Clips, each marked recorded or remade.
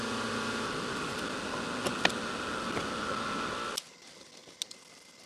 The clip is recorded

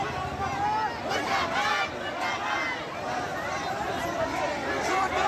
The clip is recorded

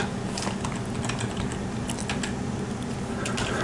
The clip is recorded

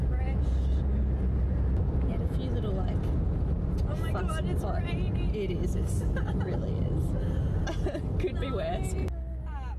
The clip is recorded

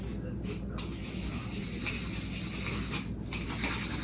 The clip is recorded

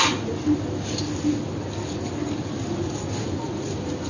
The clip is recorded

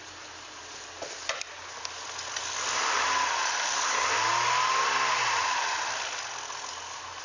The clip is recorded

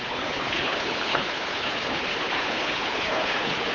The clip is remade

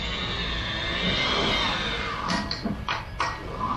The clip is recorded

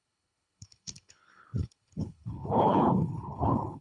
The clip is remade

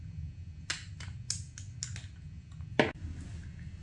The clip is recorded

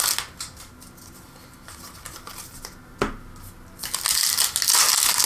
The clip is recorded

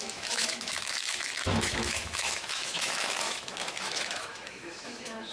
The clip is remade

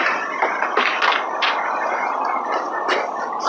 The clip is recorded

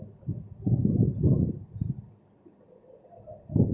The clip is recorded